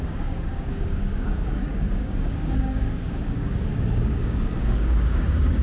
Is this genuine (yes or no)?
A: no